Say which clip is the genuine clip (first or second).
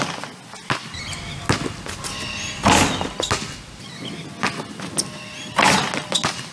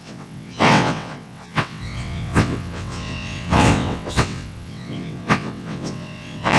first